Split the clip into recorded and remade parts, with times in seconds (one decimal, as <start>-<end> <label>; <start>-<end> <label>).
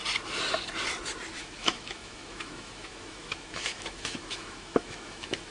0.0-1.3 recorded; 1.3-5.5 remade